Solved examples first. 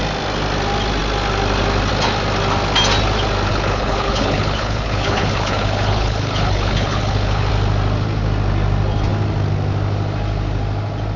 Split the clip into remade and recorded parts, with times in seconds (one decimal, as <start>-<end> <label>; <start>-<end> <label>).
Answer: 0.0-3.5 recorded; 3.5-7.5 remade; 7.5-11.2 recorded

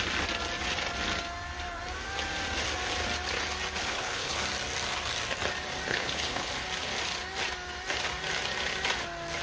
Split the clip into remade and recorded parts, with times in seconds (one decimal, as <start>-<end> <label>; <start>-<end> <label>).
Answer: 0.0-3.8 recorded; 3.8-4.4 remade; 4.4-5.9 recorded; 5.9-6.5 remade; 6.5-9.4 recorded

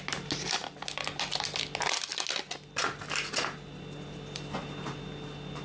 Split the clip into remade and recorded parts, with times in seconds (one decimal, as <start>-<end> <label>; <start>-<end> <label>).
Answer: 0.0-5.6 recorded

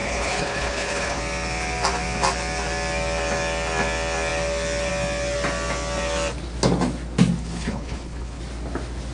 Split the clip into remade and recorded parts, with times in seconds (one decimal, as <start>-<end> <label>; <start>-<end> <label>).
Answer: 0.0-1.2 remade; 1.2-7.4 recorded; 7.4-8.4 remade; 8.4-9.1 recorded